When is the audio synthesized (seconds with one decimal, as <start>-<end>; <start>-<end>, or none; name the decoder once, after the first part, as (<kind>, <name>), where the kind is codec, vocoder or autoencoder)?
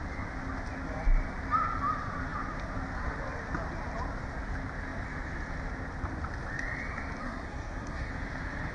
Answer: 7.2-8.1 (codec, SNAC)